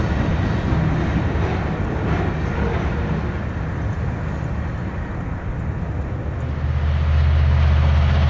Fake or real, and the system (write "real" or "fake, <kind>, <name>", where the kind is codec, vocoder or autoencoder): real